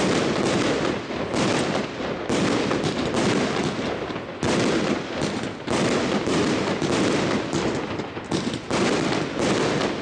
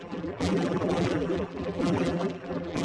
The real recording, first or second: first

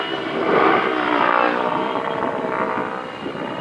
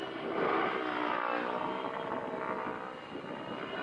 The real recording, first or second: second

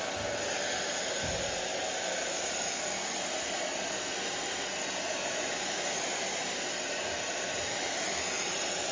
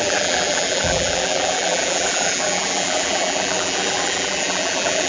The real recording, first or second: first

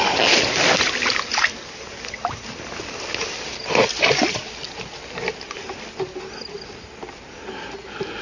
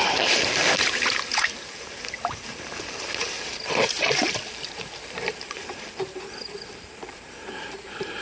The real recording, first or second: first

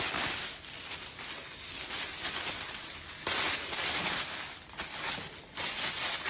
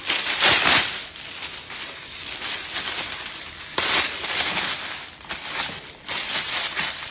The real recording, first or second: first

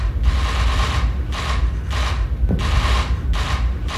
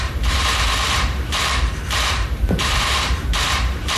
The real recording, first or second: first